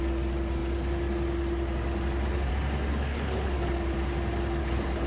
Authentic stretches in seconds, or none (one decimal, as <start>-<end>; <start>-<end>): 0.0-2.9; 3.7-4.6